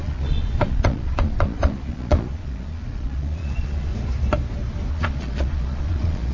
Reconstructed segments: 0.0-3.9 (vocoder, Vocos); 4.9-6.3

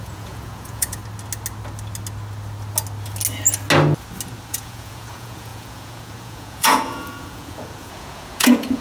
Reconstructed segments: 0.0-1.0 (vocoder, Vocos); 4.5-8.8

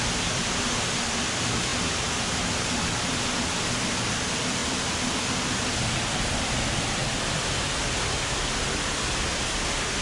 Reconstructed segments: none

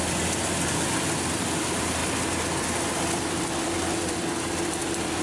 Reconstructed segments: none

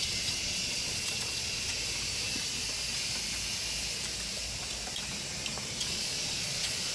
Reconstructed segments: 0.0-1.7 (vocoder, Vocos); 5.8-6.9

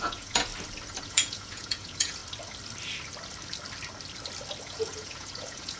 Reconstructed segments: 0.0-0.5 (vocoder, Vocos); 1.0-2.2; 4.6-5.8

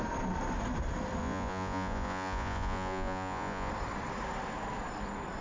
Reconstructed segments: 1.2-3.7 (vocoder, Vocos)